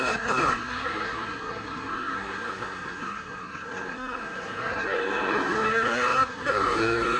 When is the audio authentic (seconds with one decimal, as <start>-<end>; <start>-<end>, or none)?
none